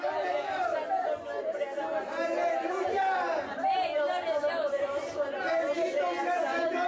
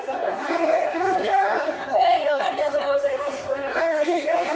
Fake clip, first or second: second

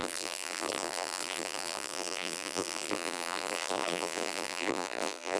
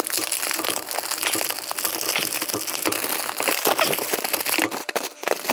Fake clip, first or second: first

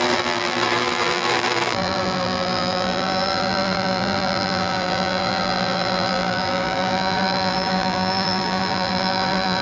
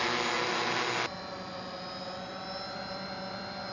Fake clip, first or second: first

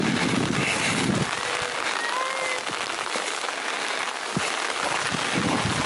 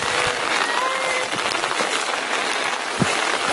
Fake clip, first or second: second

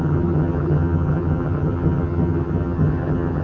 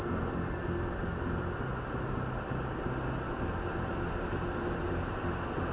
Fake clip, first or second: first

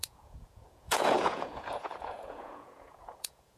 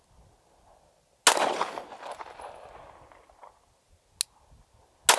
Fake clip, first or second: first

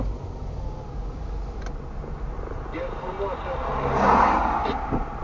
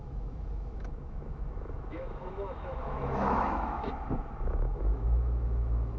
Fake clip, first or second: second